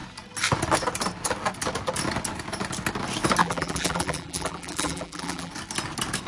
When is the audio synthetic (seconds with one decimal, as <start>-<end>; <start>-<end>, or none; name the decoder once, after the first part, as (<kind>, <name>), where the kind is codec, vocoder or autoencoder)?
3.4-5.5 (vocoder, BigVGAN v2)